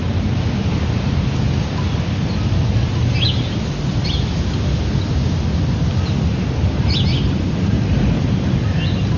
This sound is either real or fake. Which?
real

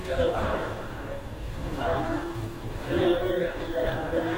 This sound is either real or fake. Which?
fake